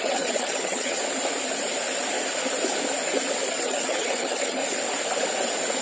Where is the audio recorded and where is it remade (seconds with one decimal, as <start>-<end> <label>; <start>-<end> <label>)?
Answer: 0.0-1.0 remade; 1.0-3.5 recorded; 3.5-4.6 remade; 4.6-5.8 recorded